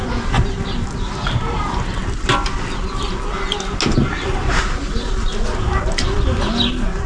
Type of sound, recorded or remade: recorded